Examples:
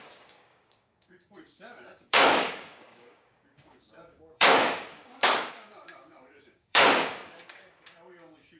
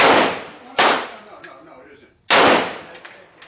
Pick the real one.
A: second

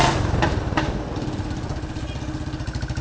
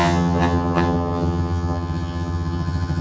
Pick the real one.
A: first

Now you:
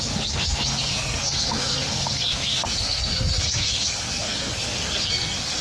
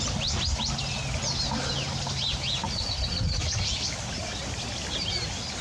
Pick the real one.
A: second